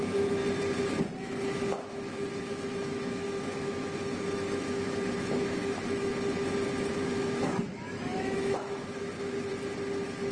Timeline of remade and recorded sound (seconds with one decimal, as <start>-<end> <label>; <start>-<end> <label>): 0.0-0.4 remade; 0.4-1.2 recorded; 1.2-6.1 remade; 6.1-6.9 recorded; 6.9-9.5 remade; 9.5-10.3 recorded